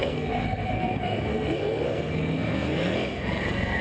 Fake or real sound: fake